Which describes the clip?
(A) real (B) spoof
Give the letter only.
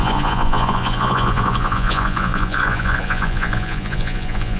B